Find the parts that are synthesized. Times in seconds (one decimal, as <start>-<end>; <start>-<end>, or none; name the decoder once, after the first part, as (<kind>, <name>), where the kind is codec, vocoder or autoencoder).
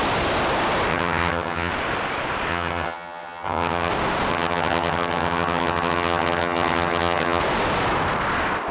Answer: 0.9-1.7 (vocoder, HiFi-GAN); 2.5-3.9; 4.3-7.4